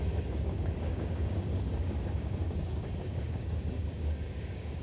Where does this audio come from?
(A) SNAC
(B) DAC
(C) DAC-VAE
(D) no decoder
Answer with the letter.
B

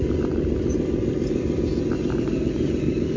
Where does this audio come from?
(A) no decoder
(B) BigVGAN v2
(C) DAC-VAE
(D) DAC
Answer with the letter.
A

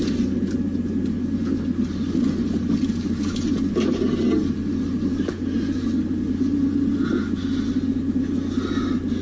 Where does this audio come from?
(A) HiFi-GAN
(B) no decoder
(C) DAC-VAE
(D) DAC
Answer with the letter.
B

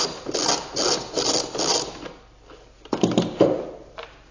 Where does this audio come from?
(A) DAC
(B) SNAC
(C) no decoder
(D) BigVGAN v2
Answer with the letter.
C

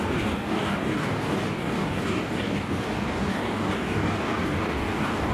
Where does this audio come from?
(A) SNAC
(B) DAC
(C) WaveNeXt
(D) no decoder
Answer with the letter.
B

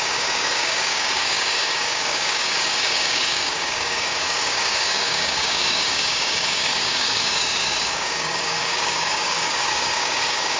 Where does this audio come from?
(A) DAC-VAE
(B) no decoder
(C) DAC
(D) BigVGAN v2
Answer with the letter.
C